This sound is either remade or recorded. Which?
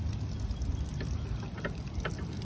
recorded